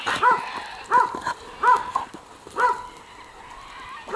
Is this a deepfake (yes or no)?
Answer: no